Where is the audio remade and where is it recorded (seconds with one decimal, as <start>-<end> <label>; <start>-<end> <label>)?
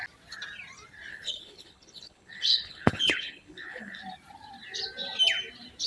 0.0-1.1 recorded; 1.1-4.0 remade; 4.0-5.9 recorded